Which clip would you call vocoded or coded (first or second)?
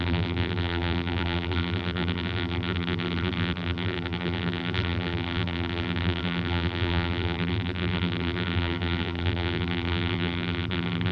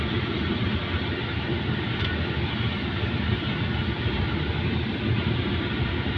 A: first